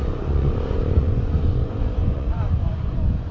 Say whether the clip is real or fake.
fake